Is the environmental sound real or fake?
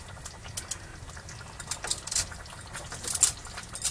real